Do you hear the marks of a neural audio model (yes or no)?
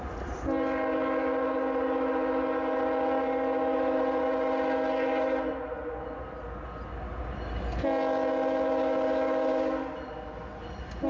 no